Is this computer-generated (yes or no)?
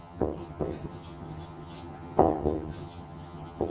yes